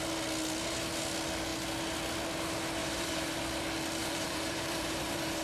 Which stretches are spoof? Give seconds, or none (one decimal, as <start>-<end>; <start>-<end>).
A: 2.8-3.4; 4.0-5.4